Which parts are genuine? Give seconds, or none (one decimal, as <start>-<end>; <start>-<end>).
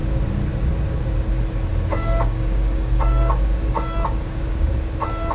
0.0-1.7; 4.7-5.3